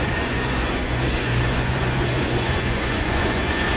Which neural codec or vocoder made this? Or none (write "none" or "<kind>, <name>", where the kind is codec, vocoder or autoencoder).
vocoder, Vocos